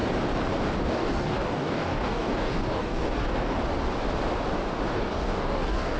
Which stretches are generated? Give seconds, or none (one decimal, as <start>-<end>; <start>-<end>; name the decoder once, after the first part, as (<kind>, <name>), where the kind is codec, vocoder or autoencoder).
0.8-3.6 (codec, DAC); 4.9-6.0